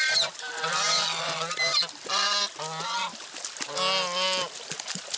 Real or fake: real